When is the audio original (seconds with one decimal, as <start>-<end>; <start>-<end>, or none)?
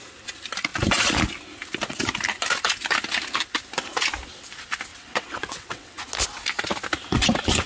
0.0-4.9; 6.0-7.7